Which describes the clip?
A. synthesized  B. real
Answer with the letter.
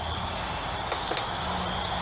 B